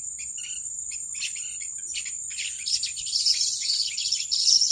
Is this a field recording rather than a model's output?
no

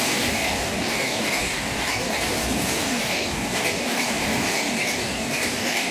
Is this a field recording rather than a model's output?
no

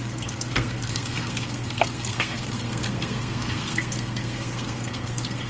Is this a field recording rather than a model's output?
no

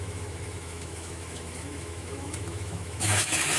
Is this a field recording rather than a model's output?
no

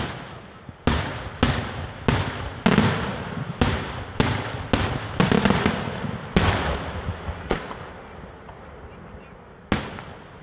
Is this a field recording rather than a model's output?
yes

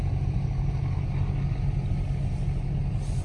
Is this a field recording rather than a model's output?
yes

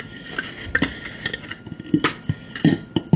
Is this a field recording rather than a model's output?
yes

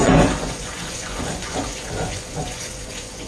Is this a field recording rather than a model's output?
no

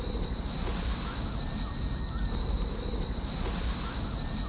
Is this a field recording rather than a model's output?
yes